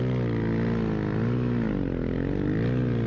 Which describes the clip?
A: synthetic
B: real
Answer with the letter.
B